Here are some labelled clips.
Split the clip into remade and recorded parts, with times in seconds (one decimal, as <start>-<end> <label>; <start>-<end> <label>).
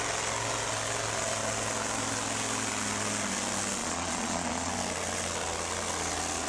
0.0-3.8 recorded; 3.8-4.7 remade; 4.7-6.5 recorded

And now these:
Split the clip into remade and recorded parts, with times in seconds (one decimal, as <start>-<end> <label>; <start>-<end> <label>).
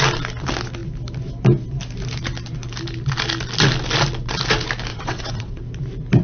0.0-4.9 recorded; 4.9-5.6 remade; 5.6-6.2 recorded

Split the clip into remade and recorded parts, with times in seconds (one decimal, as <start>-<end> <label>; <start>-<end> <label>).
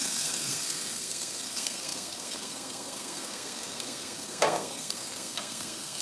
0.0-6.0 remade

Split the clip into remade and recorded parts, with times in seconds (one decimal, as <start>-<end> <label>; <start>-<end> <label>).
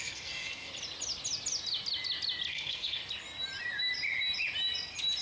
0.0-0.7 remade; 0.7-2.5 recorded; 2.5-3.0 remade; 3.0-5.2 recorded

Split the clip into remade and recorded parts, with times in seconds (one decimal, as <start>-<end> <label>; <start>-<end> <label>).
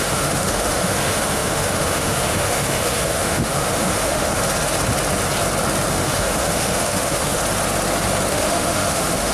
0.0-4.4 remade; 4.4-5.9 recorded; 5.9-7.4 remade; 7.4-8.3 recorded; 8.3-9.3 remade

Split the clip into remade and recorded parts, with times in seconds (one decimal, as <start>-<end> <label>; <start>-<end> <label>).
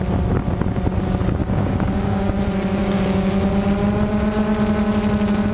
0.0-1.4 recorded; 1.4-2.4 remade; 2.4-2.8 recorded; 2.8-3.3 remade; 3.3-5.5 recorded